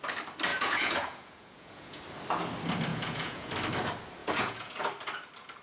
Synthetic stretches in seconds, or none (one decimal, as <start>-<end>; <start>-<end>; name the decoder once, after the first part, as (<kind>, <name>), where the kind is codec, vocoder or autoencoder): 0.5-2.0 (vocoder, Vocos); 2.9-3.5; 4.2-4.8